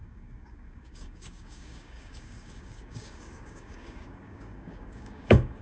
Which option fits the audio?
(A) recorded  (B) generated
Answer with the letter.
B